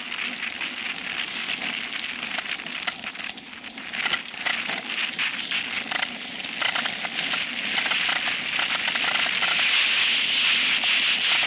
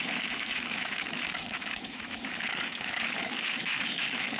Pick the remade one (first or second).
second